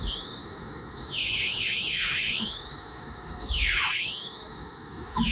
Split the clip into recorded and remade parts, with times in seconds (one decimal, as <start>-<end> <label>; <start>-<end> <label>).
0.0-5.3 remade